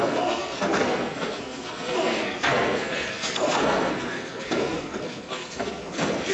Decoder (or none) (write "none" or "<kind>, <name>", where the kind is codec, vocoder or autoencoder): codec, SNAC